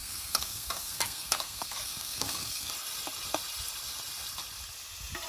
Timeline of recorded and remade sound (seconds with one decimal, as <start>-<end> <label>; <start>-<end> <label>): 0.0-2.7 remade; 2.7-5.3 recorded